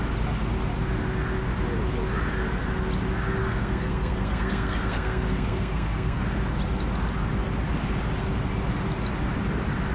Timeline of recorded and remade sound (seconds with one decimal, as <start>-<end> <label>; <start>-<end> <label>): 0.0-3.4 recorded; 3.4-6.2 remade; 6.2-9.9 recorded